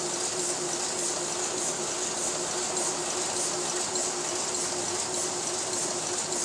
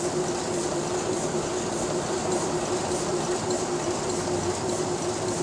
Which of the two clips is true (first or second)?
first